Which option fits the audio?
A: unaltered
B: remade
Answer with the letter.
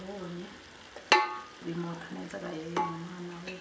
A